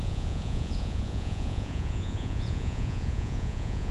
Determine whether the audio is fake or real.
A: fake